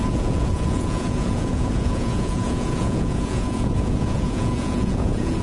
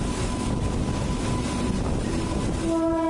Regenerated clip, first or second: first